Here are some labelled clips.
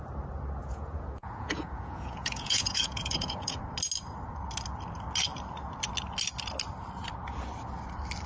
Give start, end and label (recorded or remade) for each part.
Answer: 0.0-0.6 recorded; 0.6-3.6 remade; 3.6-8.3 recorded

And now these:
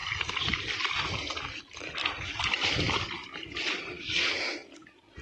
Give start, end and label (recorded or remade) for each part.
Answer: 0.0-1.6 remade; 1.6-2.0 recorded; 2.0-3.8 remade; 3.8-5.2 recorded

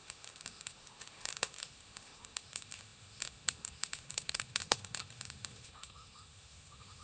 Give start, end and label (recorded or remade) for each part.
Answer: 0.0-7.0 remade